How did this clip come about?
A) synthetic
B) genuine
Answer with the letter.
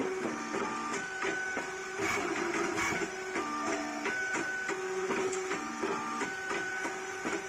A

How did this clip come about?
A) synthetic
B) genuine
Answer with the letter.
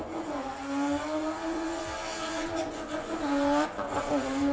A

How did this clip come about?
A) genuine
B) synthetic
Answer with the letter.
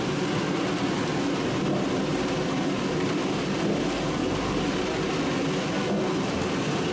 A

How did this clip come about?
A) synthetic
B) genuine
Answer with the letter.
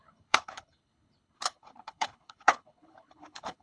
A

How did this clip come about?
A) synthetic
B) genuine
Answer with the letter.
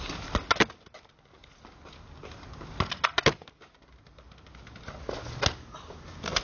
B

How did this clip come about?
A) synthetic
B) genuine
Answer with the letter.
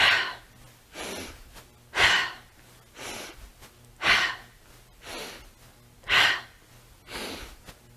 B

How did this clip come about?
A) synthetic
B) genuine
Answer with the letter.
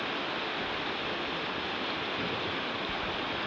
B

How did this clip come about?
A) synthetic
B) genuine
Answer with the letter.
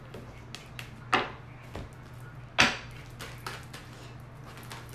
B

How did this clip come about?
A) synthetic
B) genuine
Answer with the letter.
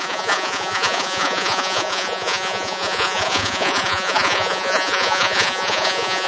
A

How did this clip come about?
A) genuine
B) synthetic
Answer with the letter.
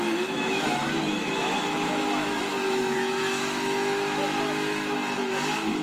B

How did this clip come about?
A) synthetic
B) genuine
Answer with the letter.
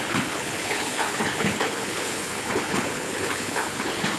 A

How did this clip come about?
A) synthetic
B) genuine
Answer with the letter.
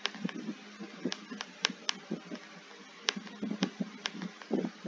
B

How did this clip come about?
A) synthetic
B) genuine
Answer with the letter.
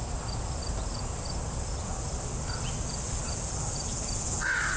B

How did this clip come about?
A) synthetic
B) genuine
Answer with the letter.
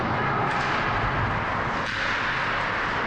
B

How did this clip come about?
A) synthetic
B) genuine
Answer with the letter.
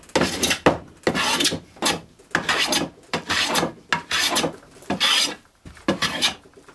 B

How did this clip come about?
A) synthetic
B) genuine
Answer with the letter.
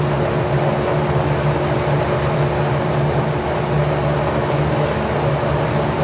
B